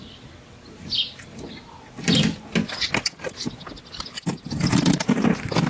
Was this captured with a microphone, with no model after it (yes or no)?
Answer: yes